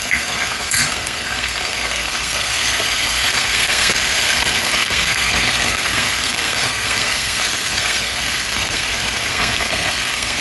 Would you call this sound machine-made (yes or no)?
yes